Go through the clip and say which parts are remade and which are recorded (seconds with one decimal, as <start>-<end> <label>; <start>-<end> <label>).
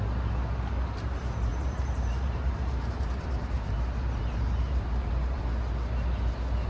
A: 0.0-1.5 recorded; 1.5-5.4 remade; 5.4-6.7 recorded